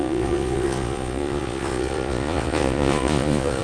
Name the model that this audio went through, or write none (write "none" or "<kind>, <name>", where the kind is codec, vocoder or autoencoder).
vocoder, Vocos